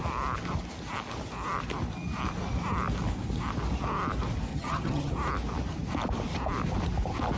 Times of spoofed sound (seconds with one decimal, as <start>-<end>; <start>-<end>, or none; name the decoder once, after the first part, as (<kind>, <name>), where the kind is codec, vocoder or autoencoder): 4.5-5.1 (vocoder, HiFi-GAN)

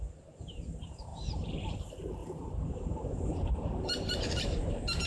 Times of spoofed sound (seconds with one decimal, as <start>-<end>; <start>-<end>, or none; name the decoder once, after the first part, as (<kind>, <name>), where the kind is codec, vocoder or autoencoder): 0.0-5.1 (vocoder, BigVGAN v2)

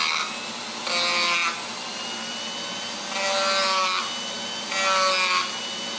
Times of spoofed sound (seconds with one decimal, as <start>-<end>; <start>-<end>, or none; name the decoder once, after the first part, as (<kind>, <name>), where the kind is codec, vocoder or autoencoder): none

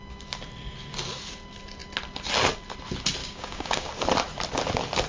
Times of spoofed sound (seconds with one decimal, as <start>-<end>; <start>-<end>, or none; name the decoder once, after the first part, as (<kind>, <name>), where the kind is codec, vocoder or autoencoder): 3.2-3.9 (codec, DAC)

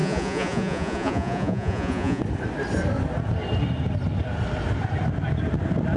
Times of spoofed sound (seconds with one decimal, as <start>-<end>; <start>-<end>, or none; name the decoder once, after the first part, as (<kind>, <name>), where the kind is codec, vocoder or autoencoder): 0.0-2.2 (vocoder, Vocos)

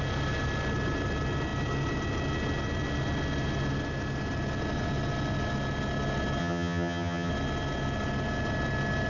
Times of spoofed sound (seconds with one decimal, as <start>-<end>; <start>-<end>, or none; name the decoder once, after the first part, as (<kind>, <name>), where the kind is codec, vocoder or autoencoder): 6.4-7.3 (vocoder, HiFi-GAN)

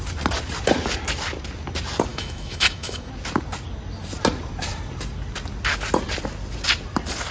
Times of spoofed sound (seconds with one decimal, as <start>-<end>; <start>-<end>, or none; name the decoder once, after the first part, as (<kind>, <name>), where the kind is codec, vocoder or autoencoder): 2.1-3.1 (autoencoder, DAC-VAE)